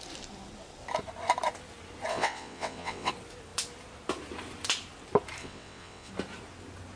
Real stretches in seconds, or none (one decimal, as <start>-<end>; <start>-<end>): 0.0-2.1; 3.1-5.4; 6.1-7.0